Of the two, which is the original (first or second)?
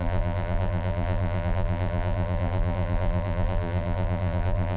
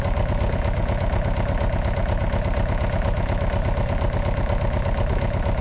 second